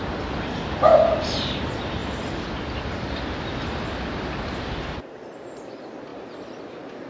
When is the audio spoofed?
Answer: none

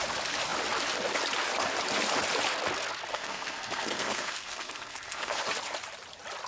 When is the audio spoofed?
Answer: 3.1-5.4 (codec, SNAC)

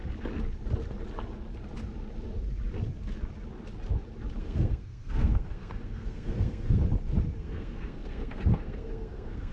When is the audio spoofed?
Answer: 4.4-6.8 (codec, SNAC); 7.4-9.5

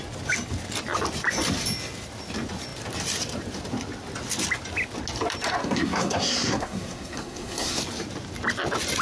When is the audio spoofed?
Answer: 5.6-7.8 (codec, SNAC)